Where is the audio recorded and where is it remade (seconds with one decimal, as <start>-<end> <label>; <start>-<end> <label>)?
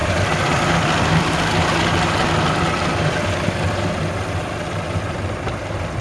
0.0-6.0 recorded